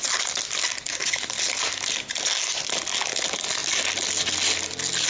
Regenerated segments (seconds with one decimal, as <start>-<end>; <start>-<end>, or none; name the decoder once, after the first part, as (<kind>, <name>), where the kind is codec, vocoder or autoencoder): none

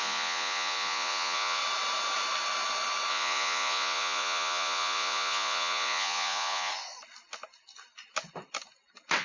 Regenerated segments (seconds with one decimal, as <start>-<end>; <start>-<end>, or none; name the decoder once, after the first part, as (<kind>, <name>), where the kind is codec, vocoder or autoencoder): 0.0-1.6 (vocoder, Vocos); 3.1-6.7

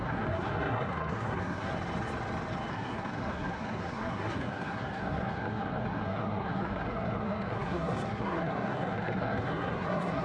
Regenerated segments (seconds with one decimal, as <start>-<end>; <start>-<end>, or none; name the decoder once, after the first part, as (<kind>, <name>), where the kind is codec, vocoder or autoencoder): 0.0-1.7 (codec, SNAC); 2.7-10.2

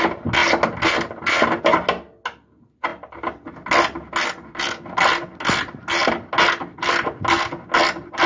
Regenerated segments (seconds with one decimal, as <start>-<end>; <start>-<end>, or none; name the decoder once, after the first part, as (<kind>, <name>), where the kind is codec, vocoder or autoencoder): none

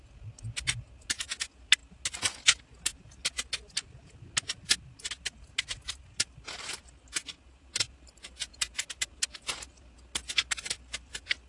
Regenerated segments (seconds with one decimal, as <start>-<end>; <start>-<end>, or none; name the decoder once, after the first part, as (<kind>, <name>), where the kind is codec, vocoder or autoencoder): none

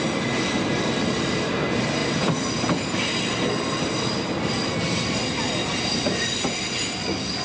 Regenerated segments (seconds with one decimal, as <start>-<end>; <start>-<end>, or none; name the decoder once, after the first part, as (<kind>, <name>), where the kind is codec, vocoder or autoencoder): none

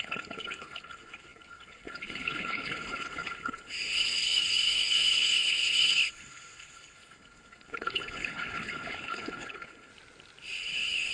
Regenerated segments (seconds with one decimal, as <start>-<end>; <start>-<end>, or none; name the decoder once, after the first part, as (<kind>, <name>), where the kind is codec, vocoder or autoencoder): 0.0-9.9 (codec, HILCodec); 10.6-11.1